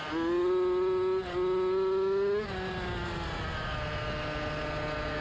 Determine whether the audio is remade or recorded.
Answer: recorded